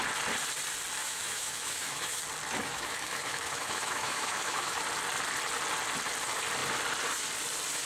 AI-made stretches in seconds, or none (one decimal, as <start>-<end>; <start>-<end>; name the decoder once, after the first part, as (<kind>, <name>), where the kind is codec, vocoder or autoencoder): 1.0-2.2 (autoencoder, DAC-VAE); 2.6-4.8